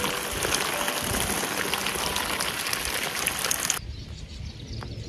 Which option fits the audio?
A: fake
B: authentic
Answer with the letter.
B